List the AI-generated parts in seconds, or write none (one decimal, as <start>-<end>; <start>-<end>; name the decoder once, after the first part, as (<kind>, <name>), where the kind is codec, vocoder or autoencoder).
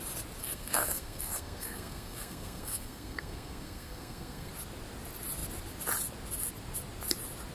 0.4-4.5 (codec, SNAC)